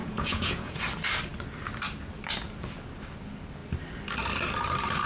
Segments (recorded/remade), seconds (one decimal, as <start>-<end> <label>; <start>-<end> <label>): 0.0-0.8 remade; 0.8-5.1 recorded